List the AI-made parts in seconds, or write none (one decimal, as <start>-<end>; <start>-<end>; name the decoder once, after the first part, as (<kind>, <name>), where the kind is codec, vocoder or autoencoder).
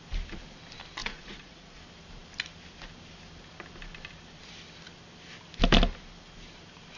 1.0-1.8 (vocoder, Vocos)